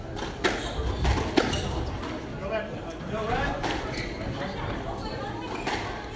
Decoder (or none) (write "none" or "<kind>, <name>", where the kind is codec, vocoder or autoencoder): none